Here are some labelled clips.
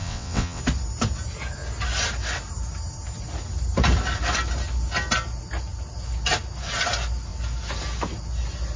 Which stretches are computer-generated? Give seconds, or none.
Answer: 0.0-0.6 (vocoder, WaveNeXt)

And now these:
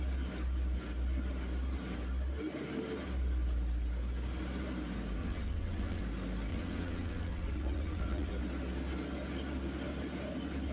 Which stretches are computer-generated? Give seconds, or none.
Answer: 5.2-6.0 (vocoder, WaveNeXt); 6.5-8.3